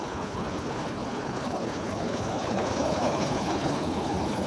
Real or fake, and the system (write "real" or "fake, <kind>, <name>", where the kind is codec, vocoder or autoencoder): fake, codec, HILCodec